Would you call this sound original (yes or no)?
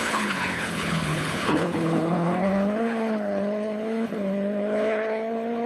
no